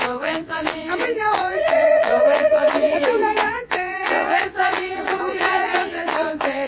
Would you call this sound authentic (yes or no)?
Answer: no